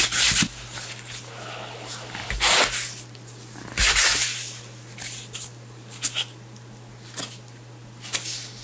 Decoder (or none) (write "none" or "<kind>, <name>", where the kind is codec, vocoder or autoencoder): none